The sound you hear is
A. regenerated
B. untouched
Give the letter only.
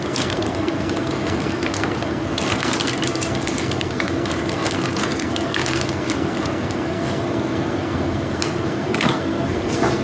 A